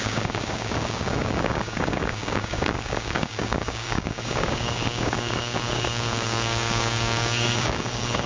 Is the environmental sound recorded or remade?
remade